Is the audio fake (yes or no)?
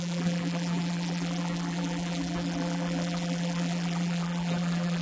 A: yes